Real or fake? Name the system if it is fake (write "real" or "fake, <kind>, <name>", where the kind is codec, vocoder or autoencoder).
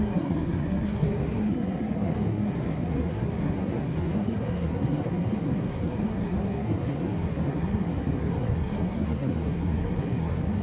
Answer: fake, codec, SNAC